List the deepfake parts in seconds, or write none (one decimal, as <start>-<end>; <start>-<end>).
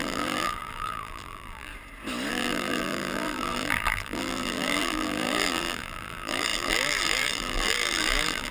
0.0-1.7; 2.3-8.5